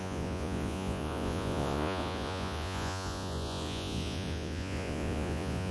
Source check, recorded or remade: remade